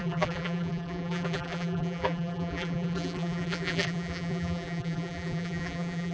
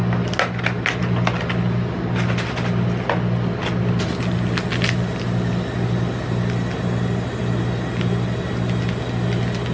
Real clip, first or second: second